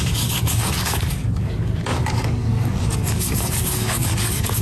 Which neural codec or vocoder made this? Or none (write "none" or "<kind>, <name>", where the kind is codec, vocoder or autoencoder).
codec, DAC